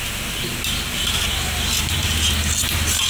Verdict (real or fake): real